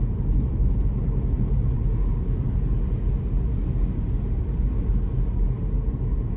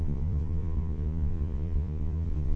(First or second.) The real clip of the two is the first